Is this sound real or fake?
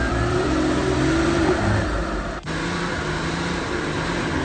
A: fake